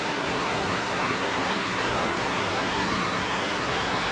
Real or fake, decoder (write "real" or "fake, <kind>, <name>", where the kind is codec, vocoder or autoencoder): fake, codec, SNAC